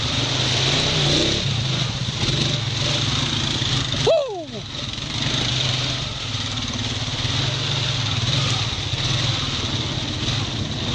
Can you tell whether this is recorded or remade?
recorded